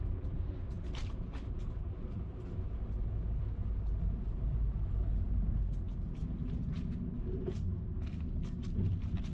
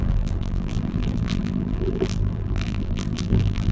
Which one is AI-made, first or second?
second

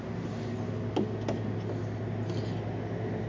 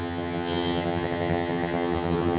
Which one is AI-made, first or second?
second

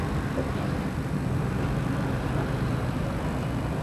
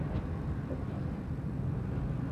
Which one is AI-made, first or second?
second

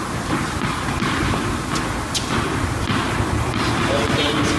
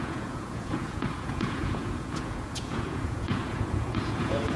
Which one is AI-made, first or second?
second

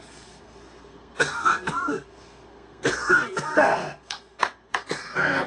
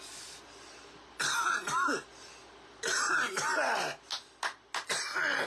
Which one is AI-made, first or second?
first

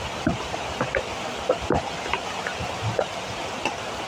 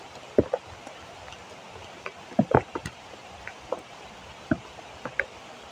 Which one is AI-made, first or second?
first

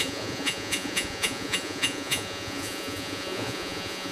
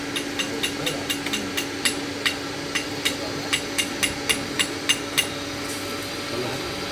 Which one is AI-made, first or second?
first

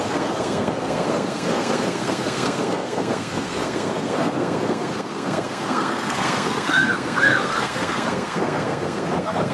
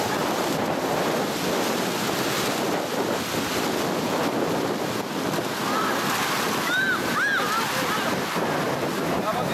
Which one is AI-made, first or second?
first